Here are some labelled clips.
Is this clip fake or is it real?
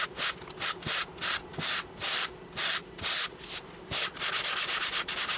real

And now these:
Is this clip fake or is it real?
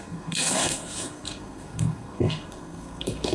fake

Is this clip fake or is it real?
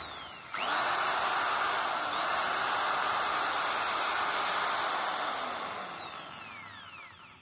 real